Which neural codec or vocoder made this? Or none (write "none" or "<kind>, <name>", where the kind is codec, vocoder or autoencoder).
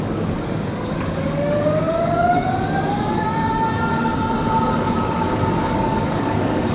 codec, DAC